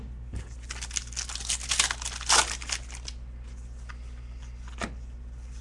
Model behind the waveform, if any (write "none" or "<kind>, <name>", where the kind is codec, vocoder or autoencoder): none